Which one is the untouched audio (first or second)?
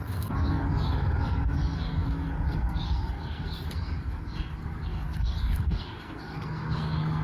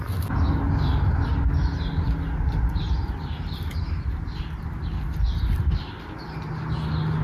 second